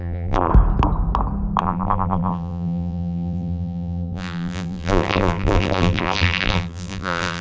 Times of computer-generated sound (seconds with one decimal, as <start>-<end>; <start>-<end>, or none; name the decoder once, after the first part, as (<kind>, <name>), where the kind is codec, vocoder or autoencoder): 0.0-0.5 (vocoder, BigVGAN v2); 1.6-7.4